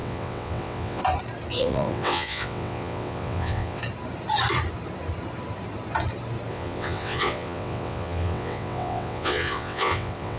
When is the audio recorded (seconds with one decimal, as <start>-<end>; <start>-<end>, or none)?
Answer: 1.0-1.6; 3.8-6.5

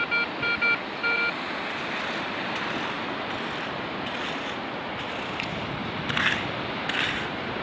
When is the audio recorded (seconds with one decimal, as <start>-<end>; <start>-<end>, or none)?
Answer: 0.0-7.6

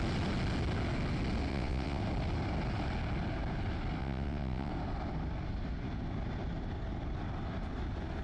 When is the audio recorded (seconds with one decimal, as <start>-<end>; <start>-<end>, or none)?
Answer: 0.0-1.5; 2.0-4.0; 4.7-8.2

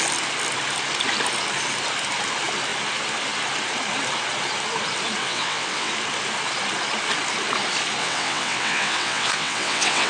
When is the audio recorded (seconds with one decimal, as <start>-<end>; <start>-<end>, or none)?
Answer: 0.0-5.2; 5.9-8.0

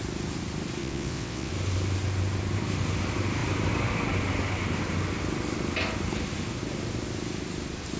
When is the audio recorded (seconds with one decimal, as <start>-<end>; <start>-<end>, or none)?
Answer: 0.0-0.8; 1.5-8.0

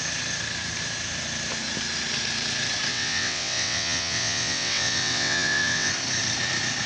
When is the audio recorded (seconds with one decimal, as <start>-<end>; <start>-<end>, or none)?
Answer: 0.0-2.9; 5.9-6.9